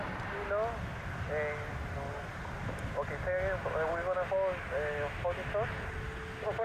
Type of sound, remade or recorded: recorded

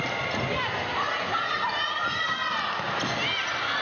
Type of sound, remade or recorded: recorded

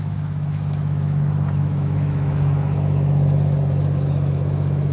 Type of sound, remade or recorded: remade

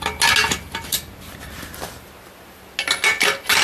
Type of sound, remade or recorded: recorded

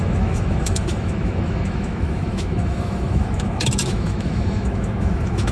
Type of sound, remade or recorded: remade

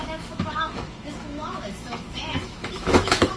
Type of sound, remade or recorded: remade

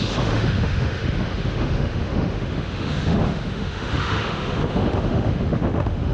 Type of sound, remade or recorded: remade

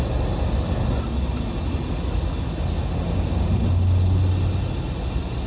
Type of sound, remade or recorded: recorded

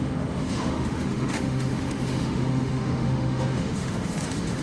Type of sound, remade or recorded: remade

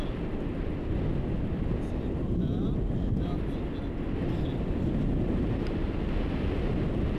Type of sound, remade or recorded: recorded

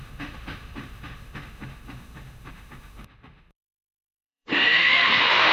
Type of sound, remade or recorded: remade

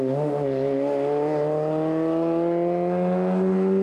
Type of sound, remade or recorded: recorded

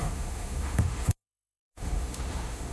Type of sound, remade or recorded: remade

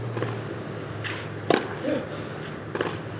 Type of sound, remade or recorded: recorded